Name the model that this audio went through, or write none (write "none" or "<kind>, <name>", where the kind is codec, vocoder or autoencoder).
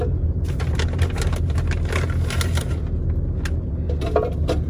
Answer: none